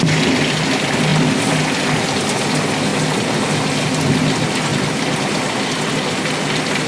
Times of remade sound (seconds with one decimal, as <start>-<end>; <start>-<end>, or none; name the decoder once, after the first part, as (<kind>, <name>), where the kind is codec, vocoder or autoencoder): none